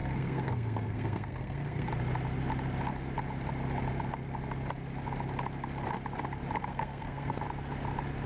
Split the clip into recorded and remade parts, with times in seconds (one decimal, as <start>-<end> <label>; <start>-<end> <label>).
0.0-1.9 remade; 1.9-6.7 recorded; 6.7-7.4 remade; 7.4-8.3 recorded